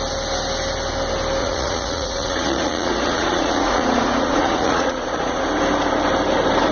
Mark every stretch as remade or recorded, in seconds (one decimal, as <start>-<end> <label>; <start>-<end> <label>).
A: 0.0-1.4 recorded; 1.4-5.4 remade; 5.4-6.7 recorded